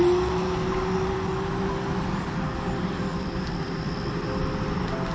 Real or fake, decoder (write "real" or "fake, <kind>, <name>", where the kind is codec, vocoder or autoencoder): real